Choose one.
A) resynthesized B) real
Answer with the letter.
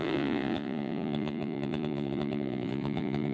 A